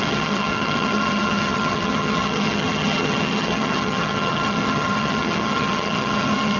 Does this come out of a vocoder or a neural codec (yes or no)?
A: yes